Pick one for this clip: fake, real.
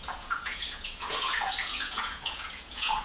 fake